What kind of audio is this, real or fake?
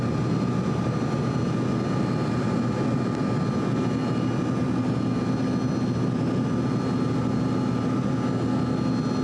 real